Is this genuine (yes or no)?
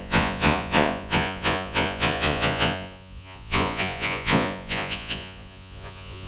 no